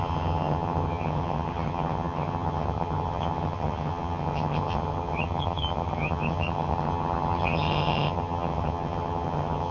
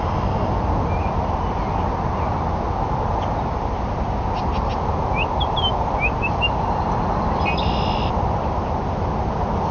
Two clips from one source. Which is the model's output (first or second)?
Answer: first